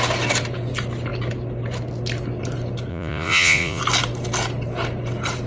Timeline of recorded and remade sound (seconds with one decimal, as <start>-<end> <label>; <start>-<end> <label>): 0.0-2.9 recorded; 2.9-3.8 remade; 3.8-5.5 recorded